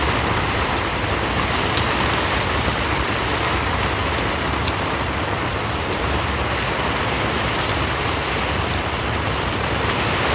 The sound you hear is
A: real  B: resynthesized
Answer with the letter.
B